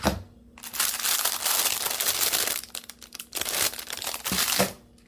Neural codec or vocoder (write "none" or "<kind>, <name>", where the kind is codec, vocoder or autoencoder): none